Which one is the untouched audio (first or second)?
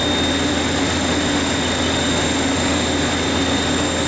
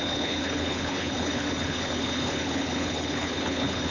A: first